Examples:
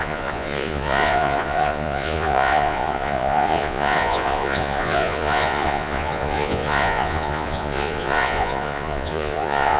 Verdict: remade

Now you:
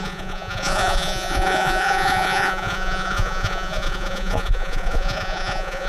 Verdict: remade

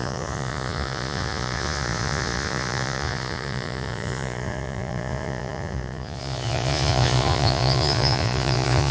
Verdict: remade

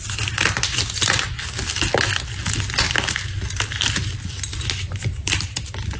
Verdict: recorded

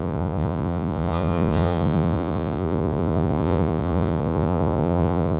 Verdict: remade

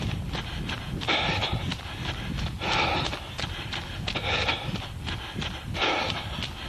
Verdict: recorded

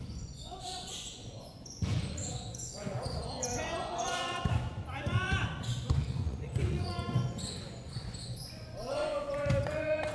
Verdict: remade